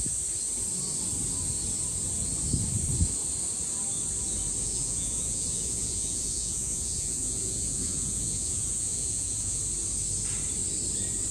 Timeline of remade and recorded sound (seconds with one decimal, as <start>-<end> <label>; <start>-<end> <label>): 0.0-4.6 recorded; 4.6-9.6 remade; 9.6-11.3 recorded